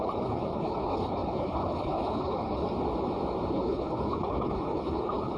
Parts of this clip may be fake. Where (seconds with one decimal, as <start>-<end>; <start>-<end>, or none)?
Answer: 0.0-2.6; 3.5-5.4